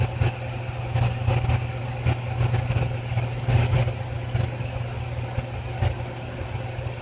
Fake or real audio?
fake